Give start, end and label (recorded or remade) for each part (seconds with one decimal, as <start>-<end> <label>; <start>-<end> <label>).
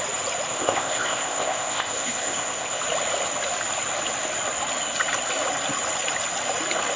0.0-0.5 recorded; 0.5-2.8 remade; 2.8-7.0 recorded